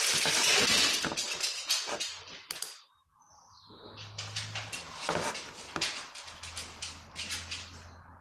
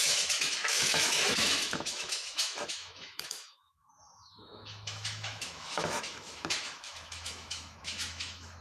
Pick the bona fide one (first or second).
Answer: first